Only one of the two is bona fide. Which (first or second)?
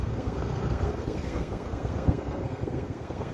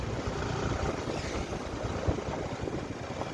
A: second